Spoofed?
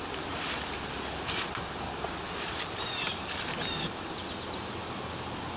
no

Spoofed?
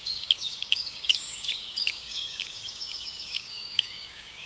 yes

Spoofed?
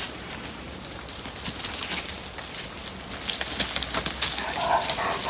no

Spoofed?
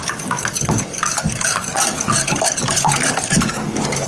yes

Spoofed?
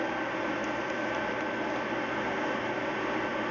no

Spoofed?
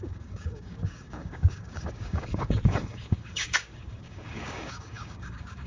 yes